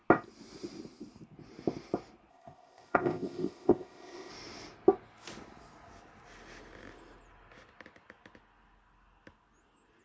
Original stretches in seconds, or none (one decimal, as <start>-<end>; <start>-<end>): 0.0-2.3; 4.3-10.0